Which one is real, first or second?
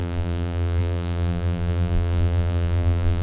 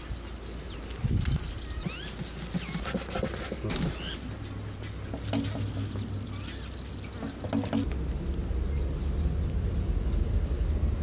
second